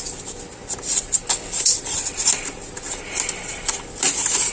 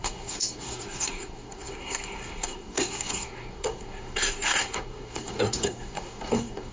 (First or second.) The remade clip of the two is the second